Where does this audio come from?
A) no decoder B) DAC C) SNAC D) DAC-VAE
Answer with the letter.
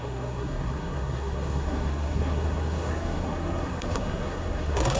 C